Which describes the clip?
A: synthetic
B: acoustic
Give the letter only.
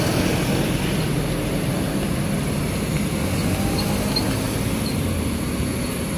B